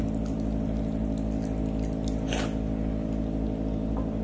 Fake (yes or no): no